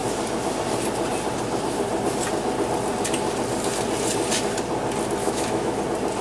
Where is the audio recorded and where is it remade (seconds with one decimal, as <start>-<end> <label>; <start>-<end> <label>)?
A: 0.0-5.2 recorded; 5.2-5.8 remade; 5.8-6.2 recorded